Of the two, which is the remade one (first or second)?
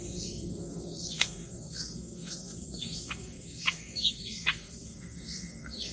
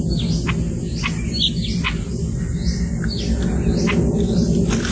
first